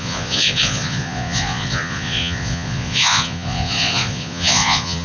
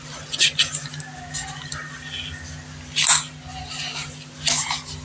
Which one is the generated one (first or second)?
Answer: first